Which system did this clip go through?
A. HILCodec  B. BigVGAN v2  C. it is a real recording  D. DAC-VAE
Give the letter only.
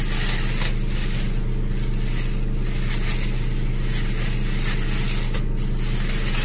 C